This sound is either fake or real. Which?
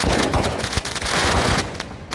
fake